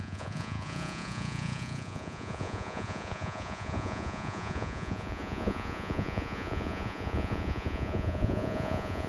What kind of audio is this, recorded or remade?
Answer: remade